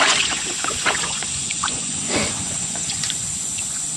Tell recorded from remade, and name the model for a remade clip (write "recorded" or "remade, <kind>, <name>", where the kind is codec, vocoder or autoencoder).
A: remade, vocoder, Vocos